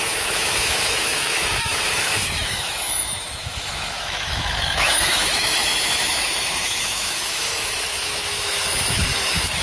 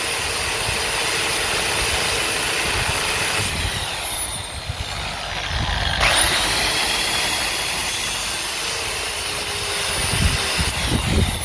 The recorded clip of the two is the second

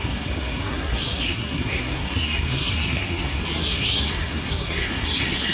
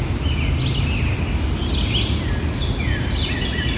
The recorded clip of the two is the second